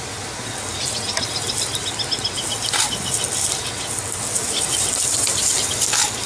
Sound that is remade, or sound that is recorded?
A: recorded